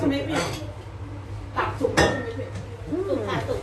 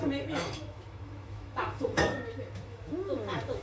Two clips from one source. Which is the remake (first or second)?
second